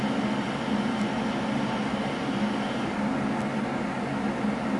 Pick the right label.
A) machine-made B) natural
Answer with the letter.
B